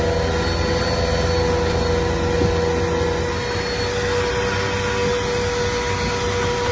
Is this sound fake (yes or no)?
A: no